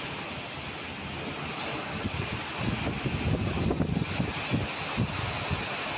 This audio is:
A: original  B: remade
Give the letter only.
A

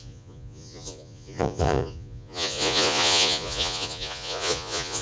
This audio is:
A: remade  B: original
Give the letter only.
A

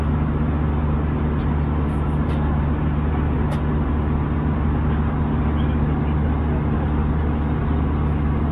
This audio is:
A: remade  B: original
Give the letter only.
B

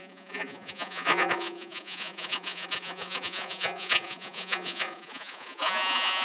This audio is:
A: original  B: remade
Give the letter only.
B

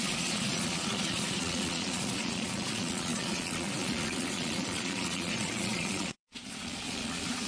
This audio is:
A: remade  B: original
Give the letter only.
A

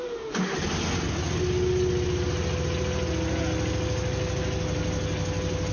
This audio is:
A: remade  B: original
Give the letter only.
B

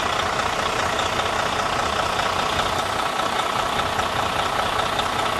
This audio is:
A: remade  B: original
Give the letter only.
B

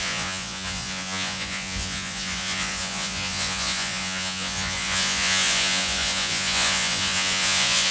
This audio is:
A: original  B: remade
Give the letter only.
B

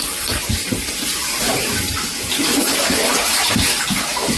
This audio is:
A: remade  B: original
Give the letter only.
B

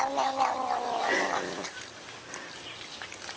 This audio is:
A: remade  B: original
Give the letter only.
B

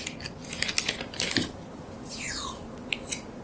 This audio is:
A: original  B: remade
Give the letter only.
A